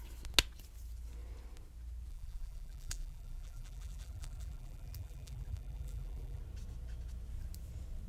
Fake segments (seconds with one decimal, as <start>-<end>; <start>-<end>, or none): 2.1-6.4